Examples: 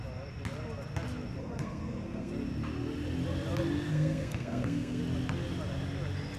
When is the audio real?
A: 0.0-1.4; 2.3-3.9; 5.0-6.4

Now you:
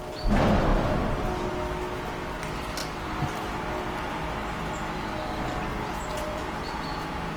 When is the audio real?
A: 0.0-5.7

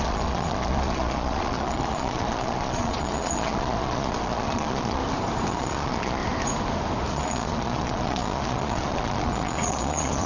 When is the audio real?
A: 5.0-5.5; 6.2-7.1